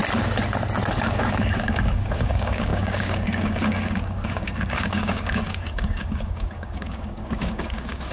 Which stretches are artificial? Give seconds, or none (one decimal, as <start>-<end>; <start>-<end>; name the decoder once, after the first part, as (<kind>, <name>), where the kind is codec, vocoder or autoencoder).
0.9-8.1 (codec, DAC)